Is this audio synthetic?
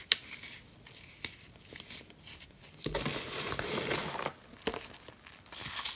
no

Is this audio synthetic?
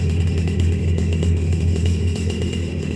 yes